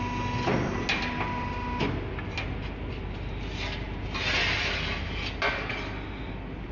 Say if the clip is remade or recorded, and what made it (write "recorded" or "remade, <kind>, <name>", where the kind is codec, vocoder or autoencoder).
recorded